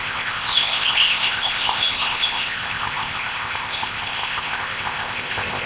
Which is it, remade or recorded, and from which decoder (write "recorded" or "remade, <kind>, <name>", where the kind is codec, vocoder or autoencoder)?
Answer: remade, codec, ZipCodec